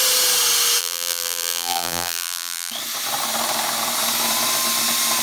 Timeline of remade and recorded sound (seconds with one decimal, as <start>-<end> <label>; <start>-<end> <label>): 0.0-0.8 recorded; 0.8-2.7 remade; 2.7-5.2 recorded